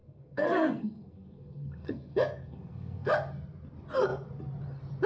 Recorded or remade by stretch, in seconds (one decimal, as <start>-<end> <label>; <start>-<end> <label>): 0.0-3.1 remade; 3.1-5.1 recorded